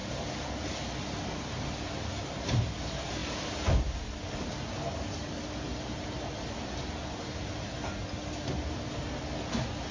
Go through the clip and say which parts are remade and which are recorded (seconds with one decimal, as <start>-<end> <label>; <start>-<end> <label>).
0.0-9.9 recorded